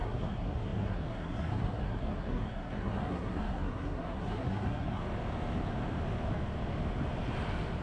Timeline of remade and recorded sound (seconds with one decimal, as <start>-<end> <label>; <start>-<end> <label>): 0.0-5.0 remade; 5.0-7.8 recorded